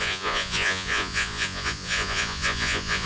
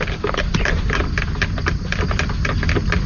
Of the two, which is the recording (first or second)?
second